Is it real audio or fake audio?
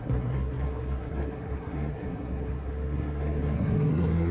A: fake